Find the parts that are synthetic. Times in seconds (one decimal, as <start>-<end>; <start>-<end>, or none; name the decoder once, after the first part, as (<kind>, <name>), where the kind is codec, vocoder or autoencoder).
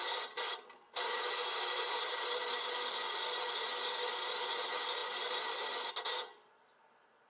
none